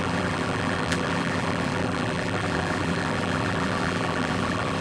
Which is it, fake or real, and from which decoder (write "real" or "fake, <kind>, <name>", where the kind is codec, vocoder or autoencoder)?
fake, vocoder, BigVGAN v2